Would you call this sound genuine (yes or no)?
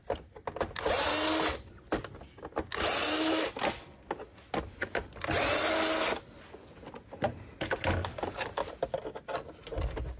yes